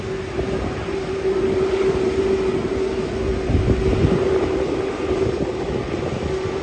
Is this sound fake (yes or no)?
no